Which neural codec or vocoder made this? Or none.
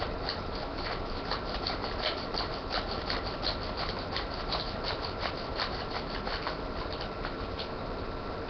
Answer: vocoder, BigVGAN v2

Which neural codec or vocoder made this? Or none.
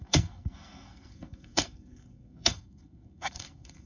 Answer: codec, SNAC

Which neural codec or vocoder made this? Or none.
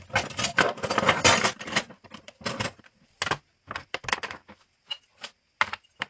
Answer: none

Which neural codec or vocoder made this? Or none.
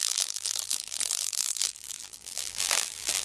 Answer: vocoder, BigVGAN v2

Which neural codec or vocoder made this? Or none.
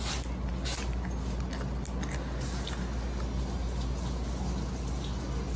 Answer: none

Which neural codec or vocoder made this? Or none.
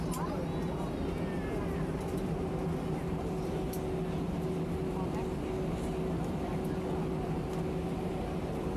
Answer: none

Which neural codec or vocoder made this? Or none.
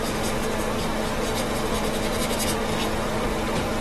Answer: none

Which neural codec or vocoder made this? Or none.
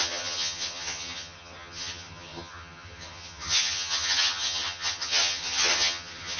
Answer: vocoder, HiFi-GAN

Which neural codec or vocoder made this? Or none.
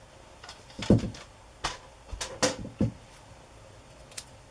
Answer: none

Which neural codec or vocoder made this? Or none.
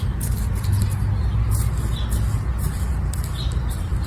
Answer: none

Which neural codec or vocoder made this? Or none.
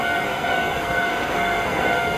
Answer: codec, SNAC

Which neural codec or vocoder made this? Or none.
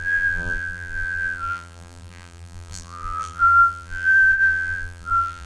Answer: vocoder, BigVGAN v2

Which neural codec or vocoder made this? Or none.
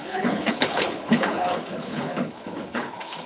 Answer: codec, HILCodec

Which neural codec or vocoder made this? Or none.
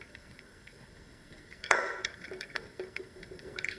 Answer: codec, SNAC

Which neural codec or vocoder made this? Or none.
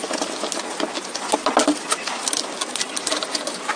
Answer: none